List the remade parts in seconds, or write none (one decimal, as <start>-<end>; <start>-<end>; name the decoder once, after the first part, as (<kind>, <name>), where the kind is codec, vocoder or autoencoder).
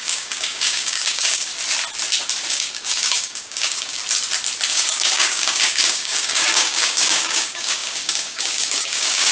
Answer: 0.0-1.5 (codec, DAC); 2.5-4.0; 4.7-9.3